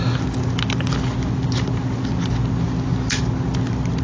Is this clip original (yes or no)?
yes